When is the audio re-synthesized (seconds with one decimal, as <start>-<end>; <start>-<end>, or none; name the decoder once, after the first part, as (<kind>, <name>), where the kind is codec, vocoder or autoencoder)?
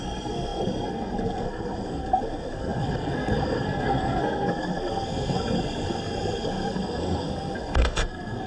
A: 0.0-8.5 (codec, SNAC)